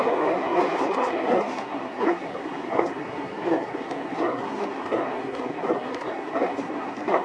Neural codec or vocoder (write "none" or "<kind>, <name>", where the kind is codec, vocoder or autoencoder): codec, SNAC